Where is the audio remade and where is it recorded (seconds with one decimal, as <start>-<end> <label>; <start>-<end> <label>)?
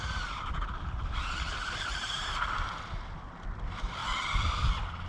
0.0-1.9 remade; 1.9-3.2 recorded; 3.2-4.0 remade; 4.0-5.1 recorded